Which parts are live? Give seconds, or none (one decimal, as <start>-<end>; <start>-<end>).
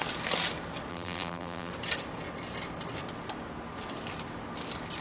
0.0-0.9; 1.7-5.0